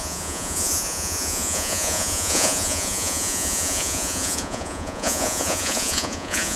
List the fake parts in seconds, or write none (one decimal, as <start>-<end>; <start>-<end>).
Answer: 0.0-6.6